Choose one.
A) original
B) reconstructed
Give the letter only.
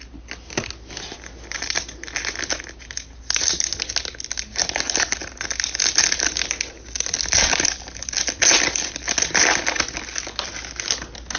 A